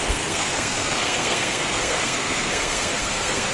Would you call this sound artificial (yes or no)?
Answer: yes